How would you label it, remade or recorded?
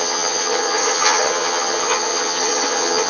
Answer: remade